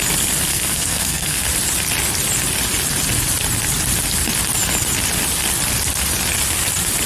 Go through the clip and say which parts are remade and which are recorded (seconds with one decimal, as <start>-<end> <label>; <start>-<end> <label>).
0.0-0.5 recorded; 0.5-1.4 remade; 1.4-7.1 recorded